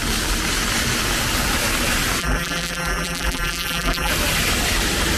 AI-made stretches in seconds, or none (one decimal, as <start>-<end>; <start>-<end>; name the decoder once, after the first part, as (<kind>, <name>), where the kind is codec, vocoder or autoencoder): 2.2-4.1 (vocoder, BigVGAN v2)